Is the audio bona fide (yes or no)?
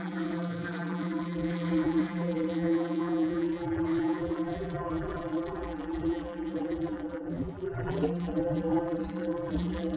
no